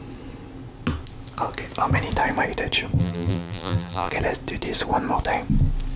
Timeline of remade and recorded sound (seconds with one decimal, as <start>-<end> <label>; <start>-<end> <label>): 0.0-3.0 recorded; 3.0-4.1 remade; 4.1-6.0 recorded